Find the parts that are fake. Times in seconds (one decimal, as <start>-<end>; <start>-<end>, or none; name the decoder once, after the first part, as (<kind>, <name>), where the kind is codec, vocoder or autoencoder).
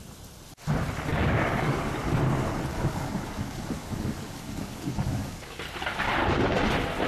1.1-2.0 (codec, DAC); 2.7-5.6